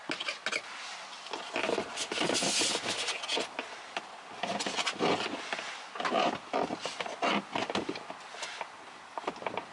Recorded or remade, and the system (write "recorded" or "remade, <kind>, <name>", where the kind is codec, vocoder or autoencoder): recorded